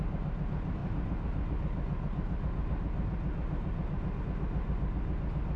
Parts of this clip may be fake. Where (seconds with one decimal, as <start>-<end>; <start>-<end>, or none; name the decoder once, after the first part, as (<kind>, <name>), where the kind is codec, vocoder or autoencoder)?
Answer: none